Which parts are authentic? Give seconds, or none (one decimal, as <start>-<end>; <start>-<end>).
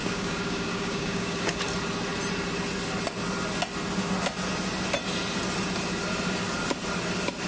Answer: 1.6-7.5